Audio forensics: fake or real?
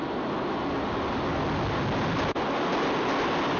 real